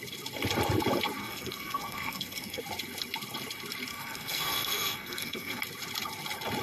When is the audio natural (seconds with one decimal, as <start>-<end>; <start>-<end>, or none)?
0.0-1.2; 2.6-3.9; 5.6-6.6